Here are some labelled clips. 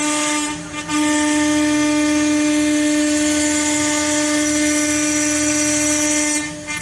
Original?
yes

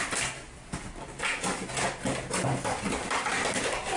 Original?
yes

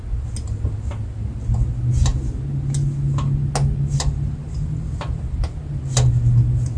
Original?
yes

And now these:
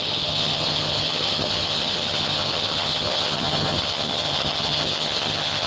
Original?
no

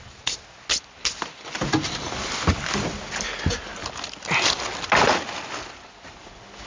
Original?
yes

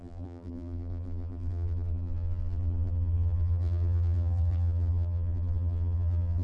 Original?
no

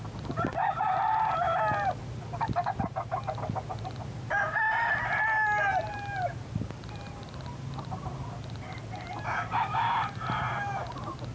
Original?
yes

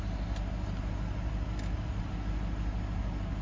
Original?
yes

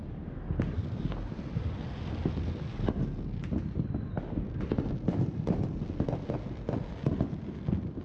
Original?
yes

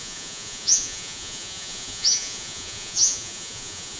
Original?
no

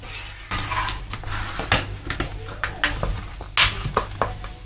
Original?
yes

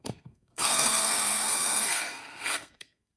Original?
no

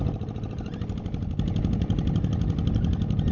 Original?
yes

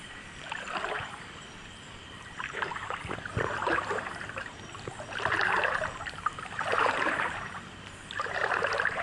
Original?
no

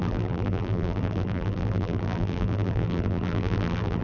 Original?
no